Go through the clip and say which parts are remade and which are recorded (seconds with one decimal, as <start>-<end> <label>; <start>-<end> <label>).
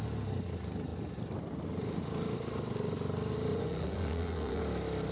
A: 0.0-3.5 recorded; 3.5-4.6 remade; 4.6-5.1 recorded